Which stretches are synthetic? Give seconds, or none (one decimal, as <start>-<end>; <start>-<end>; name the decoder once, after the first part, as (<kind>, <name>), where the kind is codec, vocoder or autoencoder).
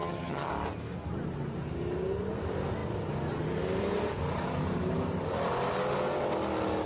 0.0-0.5 (vocoder, HiFi-GAN)